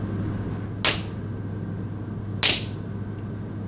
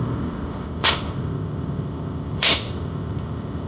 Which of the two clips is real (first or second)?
first